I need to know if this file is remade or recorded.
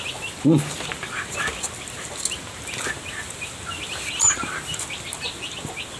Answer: recorded